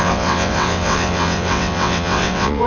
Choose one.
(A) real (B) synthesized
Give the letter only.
B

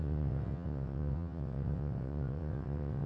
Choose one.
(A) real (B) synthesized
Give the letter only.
B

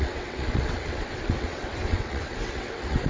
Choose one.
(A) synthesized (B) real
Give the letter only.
A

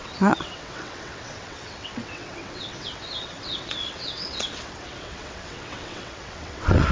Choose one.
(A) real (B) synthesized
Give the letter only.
B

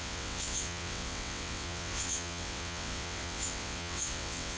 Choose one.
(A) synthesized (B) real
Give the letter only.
A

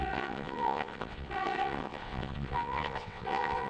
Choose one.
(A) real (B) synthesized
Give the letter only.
B